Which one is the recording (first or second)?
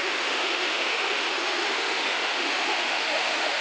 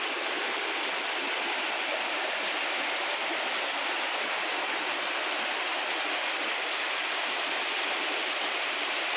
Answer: second